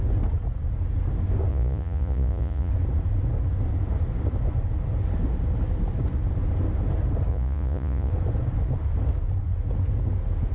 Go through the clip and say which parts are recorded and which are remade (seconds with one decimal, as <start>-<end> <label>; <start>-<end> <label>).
0.0-1.5 recorded; 1.5-2.7 remade; 2.7-7.3 recorded; 7.3-8.1 remade; 8.1-10.5 recorded